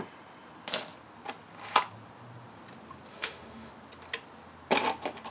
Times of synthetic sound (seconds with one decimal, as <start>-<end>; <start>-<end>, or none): 3.1-3.7